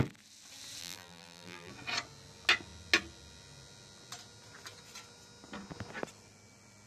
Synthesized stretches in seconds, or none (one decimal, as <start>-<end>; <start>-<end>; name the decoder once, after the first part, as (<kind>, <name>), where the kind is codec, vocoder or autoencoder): 0.8-1.7 (vocoder, BigVGAN v2)